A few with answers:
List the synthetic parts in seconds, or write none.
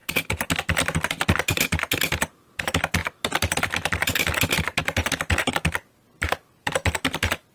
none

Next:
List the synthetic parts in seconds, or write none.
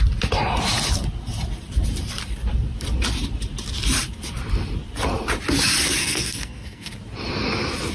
6.0-6.9 (codec, SNAC)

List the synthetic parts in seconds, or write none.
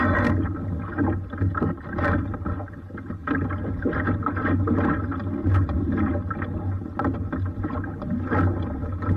none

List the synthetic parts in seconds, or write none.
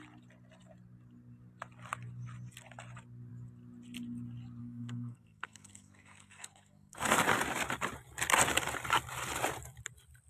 4.6-7.2 (codec, SNAC)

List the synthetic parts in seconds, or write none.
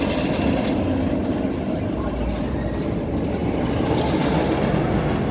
none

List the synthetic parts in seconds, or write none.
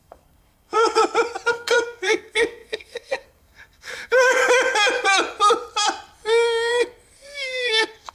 0.0-1.0 (codec, SNAC); 1.5-4.4; 6.7-8.1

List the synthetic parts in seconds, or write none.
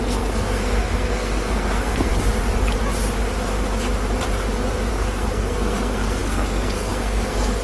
0.0-2.1 (codec, SNAC); 4.9-7.6